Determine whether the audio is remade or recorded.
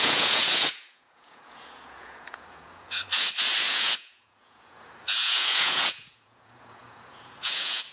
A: remade